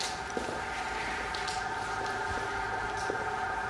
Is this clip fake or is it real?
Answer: real